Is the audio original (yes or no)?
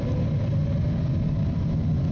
yes